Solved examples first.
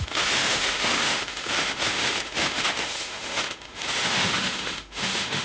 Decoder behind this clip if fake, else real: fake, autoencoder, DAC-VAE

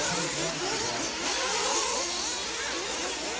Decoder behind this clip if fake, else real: real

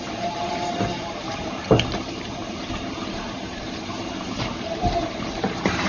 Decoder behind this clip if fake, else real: fake, vocoder, BigVGAN v2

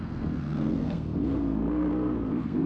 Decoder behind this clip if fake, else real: fake, codec, SNAC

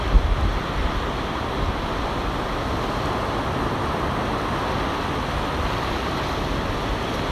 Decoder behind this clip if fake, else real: real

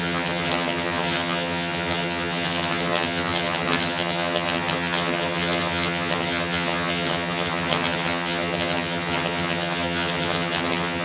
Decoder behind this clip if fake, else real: fake, vocoder, HiFi-GAN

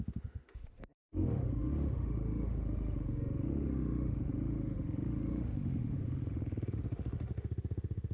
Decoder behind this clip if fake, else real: fake, autoencoder, DAC-VAE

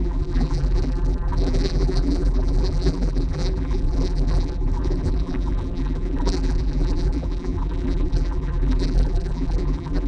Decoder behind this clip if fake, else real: fake, vocoder, BigVGAN v2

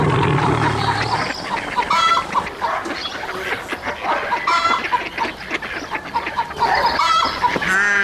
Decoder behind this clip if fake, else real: real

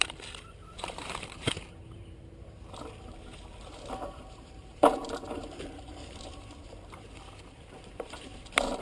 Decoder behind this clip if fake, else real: fake, vocoder, BigVGAN v2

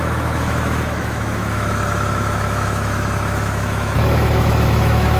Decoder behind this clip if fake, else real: fake, autoencoder, DAC-VAE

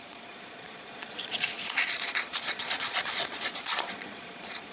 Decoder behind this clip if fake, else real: fake, vocoder, Vocos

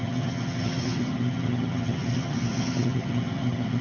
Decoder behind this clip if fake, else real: fake, vocoder, HiFi-GAN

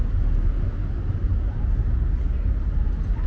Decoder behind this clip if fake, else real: real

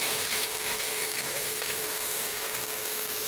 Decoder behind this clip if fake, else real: fake, codec, DAC